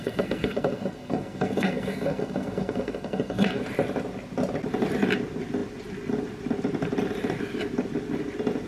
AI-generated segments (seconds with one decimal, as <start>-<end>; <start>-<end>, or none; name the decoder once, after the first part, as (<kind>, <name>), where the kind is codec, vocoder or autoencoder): 0.0-3.6 (codec, SNAC)